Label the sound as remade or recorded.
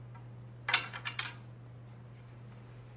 recorded